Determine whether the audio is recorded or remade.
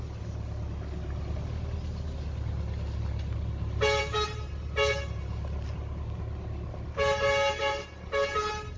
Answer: recorded